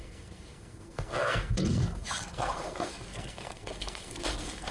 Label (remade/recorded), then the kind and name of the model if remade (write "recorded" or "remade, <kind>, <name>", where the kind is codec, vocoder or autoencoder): remade, codec, SNAC